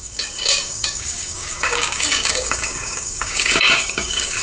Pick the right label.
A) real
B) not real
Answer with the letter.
B